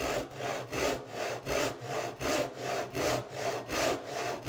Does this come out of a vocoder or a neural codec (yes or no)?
no